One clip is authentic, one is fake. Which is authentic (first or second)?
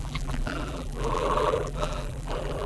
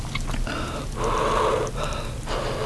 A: second